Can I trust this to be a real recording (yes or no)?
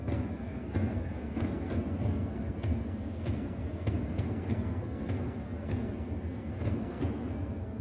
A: no